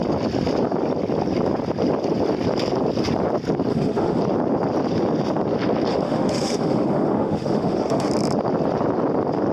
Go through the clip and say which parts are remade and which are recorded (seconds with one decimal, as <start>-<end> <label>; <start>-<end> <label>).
0.0-3.7 recorded; 3.7-4.2 remade; 4.2-5.9 recorded; 5.9-8.1 remade; 8.1-9.5 recorded